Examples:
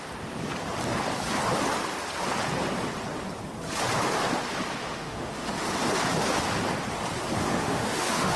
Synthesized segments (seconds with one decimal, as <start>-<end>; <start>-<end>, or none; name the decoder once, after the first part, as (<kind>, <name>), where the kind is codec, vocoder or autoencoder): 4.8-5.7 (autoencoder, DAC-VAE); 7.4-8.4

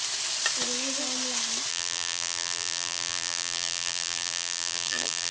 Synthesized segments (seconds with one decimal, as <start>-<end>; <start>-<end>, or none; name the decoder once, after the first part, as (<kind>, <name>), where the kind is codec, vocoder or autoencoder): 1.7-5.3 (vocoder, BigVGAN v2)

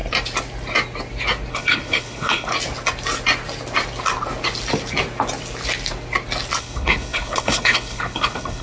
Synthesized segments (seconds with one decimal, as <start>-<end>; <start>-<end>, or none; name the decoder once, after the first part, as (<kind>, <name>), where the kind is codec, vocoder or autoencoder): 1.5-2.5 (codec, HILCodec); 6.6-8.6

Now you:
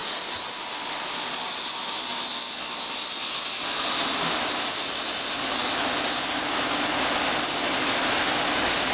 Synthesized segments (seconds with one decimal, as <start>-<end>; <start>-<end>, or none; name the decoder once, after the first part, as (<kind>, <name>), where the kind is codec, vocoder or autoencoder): 0.0-1.7 (vocoder, BigVGAN v2)

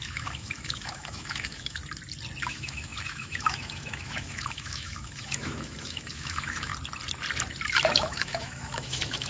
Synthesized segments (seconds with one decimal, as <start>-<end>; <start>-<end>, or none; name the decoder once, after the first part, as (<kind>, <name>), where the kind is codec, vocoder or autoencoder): 0.0-1.8 (autoencoder, DAC-VAE); 2.4-6.7; 7.9-9.3